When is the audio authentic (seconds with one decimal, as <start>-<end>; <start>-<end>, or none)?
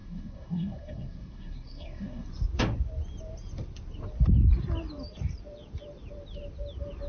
2.3-7.1